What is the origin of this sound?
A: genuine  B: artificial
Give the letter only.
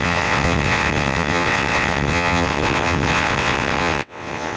B